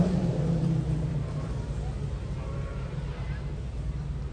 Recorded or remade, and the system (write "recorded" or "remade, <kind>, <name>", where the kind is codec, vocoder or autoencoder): remade, vocoder, BigVGAN v2